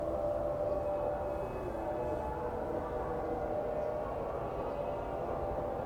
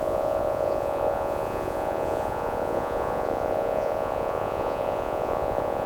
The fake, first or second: second